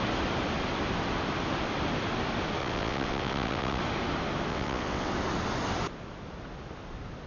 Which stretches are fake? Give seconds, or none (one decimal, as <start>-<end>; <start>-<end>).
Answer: 2.6-3.8; 4.5-5.1